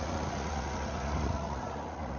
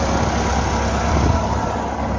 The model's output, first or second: first